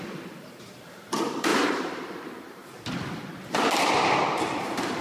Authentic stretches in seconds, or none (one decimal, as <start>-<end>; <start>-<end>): 2.6-4.4